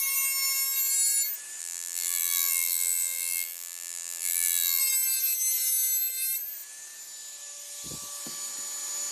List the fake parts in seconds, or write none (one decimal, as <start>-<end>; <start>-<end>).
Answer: 1.6-4.8